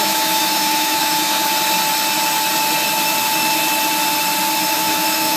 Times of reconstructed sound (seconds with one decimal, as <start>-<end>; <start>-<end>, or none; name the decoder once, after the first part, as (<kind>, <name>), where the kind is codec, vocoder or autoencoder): 0.0-1.5 (autoencoder, DAC-VAE); 4.7-5.4